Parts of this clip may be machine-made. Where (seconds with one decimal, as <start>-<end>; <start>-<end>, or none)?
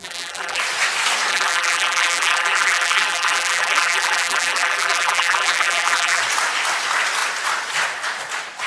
0.0-0.6; 1.3-6.2